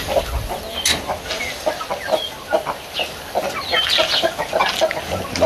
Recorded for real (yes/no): yes